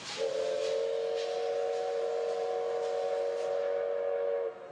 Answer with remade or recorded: recorded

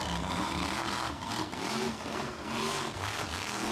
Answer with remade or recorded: remade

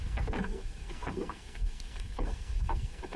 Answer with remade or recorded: remade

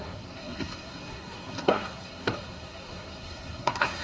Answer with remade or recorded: remade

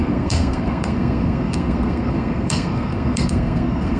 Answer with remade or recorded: remade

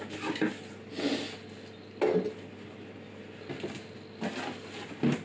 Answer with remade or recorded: recorded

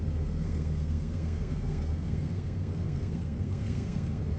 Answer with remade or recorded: remade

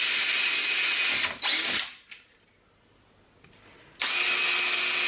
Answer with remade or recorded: recorded